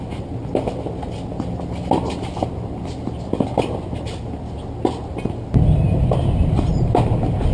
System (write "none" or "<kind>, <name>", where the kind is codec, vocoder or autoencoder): none